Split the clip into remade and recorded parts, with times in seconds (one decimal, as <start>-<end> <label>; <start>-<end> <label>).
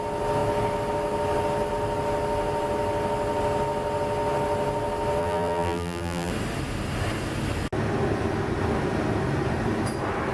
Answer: 0.0-5.2 recorded; 5.2-6.3 remade; 6.3-10.3 recorded